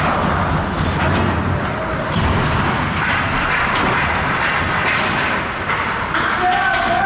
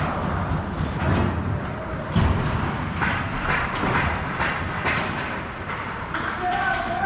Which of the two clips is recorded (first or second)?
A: first